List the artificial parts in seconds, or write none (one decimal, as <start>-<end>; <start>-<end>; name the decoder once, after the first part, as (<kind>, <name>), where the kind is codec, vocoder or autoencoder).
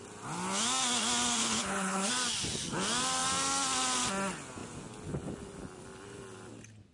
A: 1.4-2.1 (codec, HILCodec)